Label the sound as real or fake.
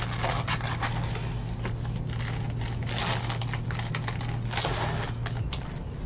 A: real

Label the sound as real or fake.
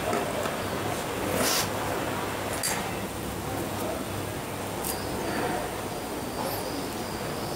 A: real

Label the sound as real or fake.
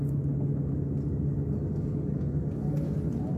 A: real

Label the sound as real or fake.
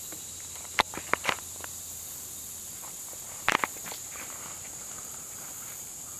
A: real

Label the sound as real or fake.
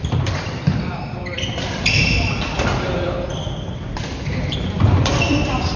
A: fake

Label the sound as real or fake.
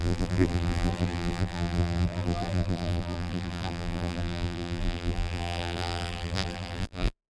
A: fake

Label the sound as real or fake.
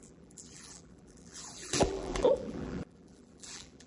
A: fake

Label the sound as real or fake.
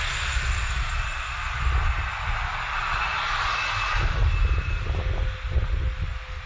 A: real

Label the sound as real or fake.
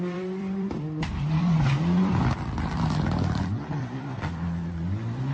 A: fake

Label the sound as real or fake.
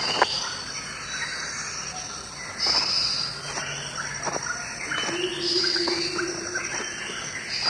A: real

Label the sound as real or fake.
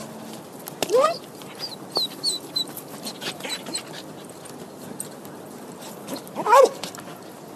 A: real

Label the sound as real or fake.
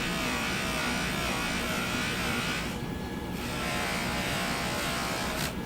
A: fake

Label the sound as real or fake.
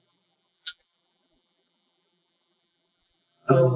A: fake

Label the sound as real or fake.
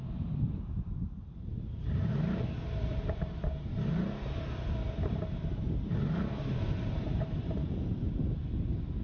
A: fake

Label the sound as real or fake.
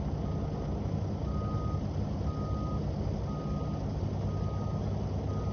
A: real